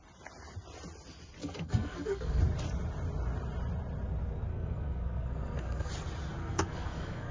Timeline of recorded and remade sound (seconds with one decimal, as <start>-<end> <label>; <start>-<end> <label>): 0.0-1.4 recorded; 1.4-2.4 remade; 2.4-4.5 recorded; 4.5-5.9 remade; 5.9-6.4 recorded; 6.4-7.3 remade